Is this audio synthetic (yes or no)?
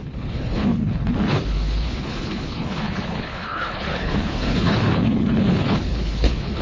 yes